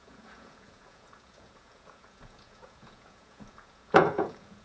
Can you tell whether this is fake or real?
fake